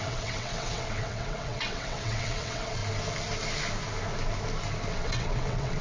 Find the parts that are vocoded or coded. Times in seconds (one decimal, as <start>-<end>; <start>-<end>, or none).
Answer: 0.0-2.8; 4.9-5.8